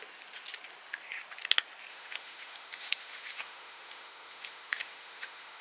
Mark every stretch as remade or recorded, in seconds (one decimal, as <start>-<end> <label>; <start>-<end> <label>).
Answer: 0.0-1.9 recorded; 1.9-5.6 remade